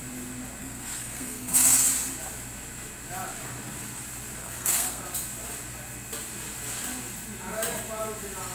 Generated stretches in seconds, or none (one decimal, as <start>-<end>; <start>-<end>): 0.6-1.9; 4.4-5.0